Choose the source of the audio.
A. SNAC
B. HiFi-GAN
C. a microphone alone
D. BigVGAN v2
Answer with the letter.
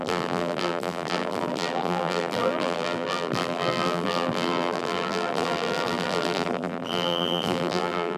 D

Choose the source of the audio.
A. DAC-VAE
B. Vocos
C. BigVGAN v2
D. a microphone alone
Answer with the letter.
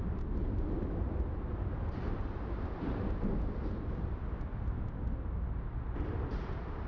D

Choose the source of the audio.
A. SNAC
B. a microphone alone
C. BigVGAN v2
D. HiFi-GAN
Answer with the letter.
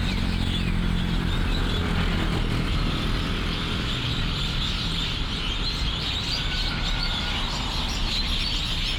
B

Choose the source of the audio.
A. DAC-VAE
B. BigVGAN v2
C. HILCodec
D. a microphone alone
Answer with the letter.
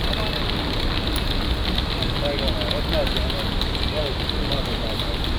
D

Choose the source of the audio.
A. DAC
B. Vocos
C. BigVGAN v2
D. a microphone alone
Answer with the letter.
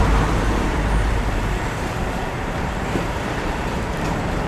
C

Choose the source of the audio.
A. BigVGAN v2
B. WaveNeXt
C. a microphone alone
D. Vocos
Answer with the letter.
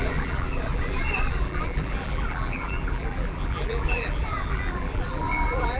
A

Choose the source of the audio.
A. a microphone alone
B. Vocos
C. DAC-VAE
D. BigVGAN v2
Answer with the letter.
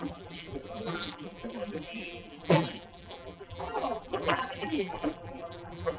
D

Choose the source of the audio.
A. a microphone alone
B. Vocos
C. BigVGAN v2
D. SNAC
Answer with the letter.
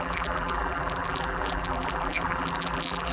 C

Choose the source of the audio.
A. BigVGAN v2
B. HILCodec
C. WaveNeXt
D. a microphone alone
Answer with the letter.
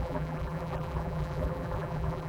A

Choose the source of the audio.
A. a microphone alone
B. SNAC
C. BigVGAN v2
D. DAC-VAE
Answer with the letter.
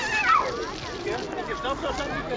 A